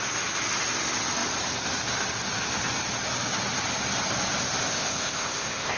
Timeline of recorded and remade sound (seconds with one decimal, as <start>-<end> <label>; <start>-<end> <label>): 0.0-4.7 recorded; 4.7-5.8 remade